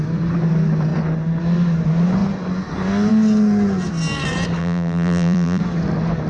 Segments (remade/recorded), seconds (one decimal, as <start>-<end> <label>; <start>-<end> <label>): 0.0-4.6 recorded; 4.6-5.6 remade; 5.6-6.3 recorded